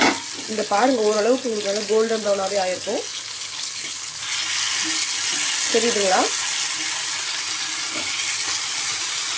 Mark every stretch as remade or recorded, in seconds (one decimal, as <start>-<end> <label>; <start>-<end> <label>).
0.0-3.1 recorded; 3.1-4.2 remade; 4.2-9.4 recorded